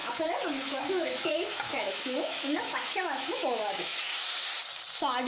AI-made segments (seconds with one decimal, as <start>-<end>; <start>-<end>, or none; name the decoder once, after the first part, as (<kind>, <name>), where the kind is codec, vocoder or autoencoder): 0.0-4.1 (autoencoder, DAC-VAE)